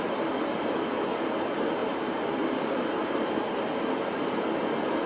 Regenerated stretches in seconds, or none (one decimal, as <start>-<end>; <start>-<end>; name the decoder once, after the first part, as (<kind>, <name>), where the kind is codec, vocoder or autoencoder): 1.8-3.3 (vocoder, BigVGAN v2)